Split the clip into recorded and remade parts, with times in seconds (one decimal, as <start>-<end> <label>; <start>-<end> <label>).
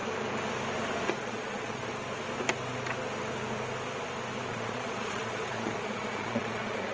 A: 0.0-1.1 recorded; 1.1-1.9 remade; 1.9-4.5 recorded; 4.5-6.9 remade